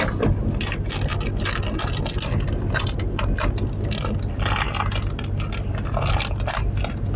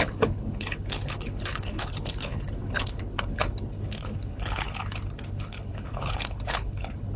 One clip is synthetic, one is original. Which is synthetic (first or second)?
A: second